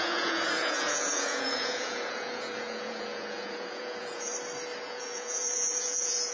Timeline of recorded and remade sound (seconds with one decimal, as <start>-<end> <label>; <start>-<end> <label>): 0.0-4.3 remade; 4.3-4.8 recorded; 4.8-6.3 remade